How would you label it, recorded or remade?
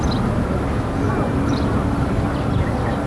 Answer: recorded